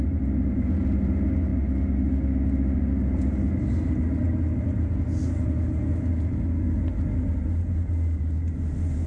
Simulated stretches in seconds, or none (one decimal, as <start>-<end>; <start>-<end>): none